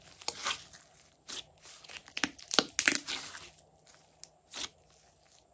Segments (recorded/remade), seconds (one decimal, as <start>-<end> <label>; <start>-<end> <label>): 0.0-5.5 recorded